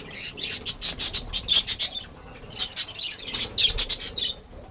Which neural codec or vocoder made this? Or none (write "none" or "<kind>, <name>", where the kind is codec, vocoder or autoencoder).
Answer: none